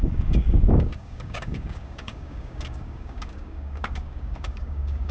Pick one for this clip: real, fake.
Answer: fake